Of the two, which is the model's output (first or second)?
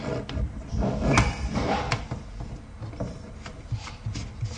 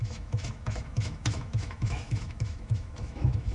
second